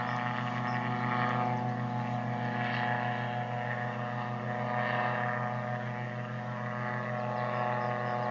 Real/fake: real